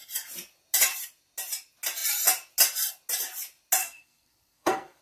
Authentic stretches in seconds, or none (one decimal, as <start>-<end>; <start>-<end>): 0.0-3.8